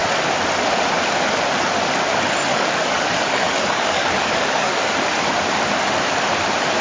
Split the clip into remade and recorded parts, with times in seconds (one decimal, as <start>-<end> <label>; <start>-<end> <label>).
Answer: 0.0-2.5 recorded; 2.5-4.9 remade; 4.9-6.8 recorded